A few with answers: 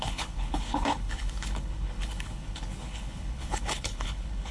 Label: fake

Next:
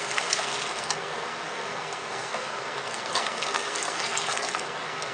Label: fake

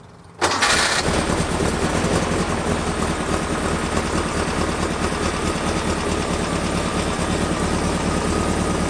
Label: real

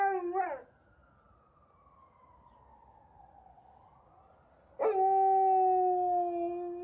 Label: real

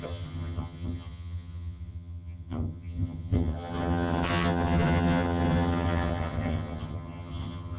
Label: fake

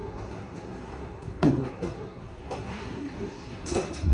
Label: fake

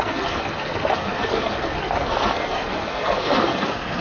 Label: fake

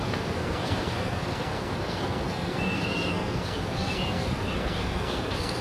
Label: fake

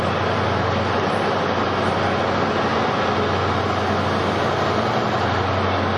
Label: real